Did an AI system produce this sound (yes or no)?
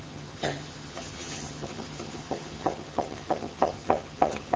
yes